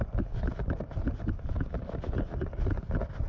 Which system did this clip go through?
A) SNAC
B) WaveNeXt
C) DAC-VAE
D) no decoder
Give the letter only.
D